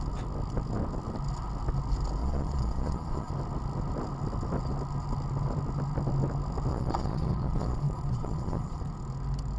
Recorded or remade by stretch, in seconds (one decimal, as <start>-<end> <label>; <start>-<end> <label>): 0.0-2.2 recorded; 2.2-3.3 remade; 3.3-6.7 recorded; 6.7-8.8 remade; 8.8-9.6 recorded